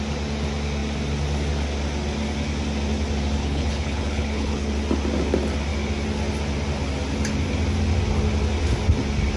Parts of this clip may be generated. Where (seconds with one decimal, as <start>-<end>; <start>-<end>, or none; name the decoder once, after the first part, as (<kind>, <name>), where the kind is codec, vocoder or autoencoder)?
3.4-4.7 (codec, HILCodec)